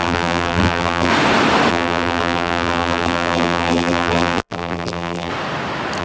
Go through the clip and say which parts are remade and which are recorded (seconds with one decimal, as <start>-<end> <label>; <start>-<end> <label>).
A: 0.0-1.1 remade; 1.1-1.7 recorded; 1.7-5.3 remade; 5.3-6.0 recorded